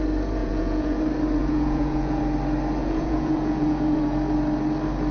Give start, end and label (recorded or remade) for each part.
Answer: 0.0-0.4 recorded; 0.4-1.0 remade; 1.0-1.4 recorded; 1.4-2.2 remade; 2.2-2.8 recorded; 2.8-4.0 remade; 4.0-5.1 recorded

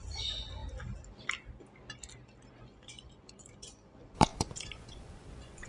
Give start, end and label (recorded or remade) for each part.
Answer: 0.0-0.6 remade; 0.6-2.5 recorded; 2.5-5.7 remade

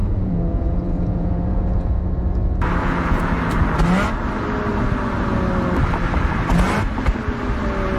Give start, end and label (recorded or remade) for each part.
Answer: 0.0-2.0 remade; 2.0-2.8 recorded; 2.8-3.3 remade; 3.3-8.0 recorded